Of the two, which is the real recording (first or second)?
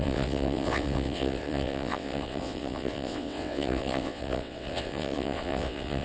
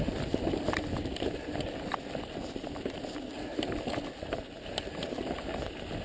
second